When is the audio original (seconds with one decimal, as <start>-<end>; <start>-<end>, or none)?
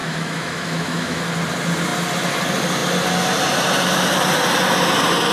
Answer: 1.2-5.3